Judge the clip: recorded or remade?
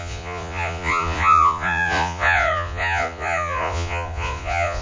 remade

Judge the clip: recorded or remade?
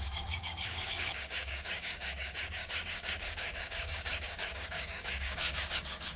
remade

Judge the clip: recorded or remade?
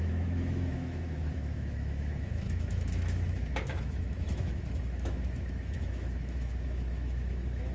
remade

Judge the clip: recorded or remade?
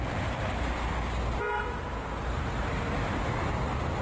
recorded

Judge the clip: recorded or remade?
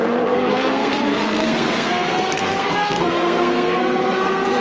remade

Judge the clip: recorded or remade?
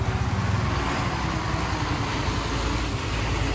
recorded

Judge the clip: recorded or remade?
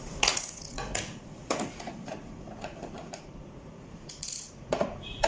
remade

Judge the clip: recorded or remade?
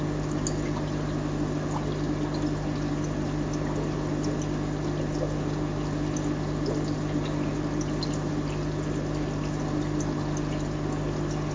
recorded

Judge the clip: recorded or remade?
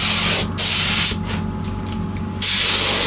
recorded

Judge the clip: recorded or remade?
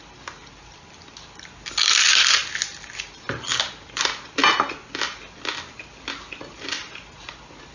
recorded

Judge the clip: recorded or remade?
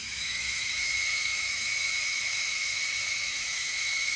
remade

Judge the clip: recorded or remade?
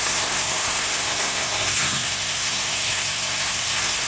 remade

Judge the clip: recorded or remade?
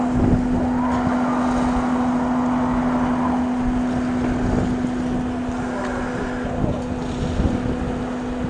recorded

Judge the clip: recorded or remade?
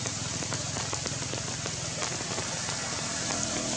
recorded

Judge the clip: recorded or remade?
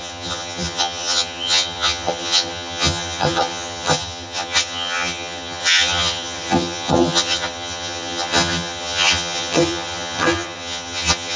remade